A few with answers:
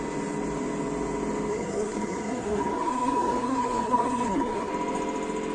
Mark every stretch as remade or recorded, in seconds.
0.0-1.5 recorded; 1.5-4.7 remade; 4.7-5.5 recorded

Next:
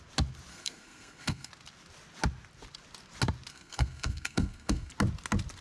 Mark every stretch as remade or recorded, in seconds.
0.0-0.5 recorded; 0.5-1.5 remade; 1.5-3.5 recorded; 3.5-4.9 remade; 4.9-5.6 recorded

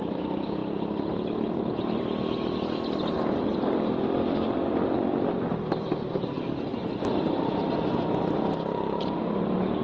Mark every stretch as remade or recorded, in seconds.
0.0-0.6 remade; 0.6-1.5 recorded; 1.5-6.7 remade; 6.7-8.2 recorded; 8.2-9.8 remade

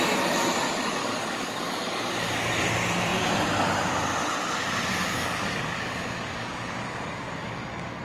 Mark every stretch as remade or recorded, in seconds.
0.0-1.0 recorded; 1.0-2.7 remade; 2.7-5.0 recorded; 5.0-8.0 remade